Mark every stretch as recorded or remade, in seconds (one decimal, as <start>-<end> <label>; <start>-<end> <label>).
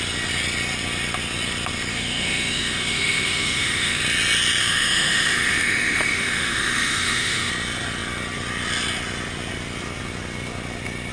0.0-1.9 recorded; 1.9-4.0 remade; 4.0-4.6 recorded; 4.6-7.5 remade; 7.5-11.1 recorded